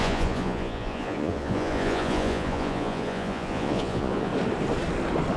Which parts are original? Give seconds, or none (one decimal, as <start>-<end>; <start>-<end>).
4.3-5.4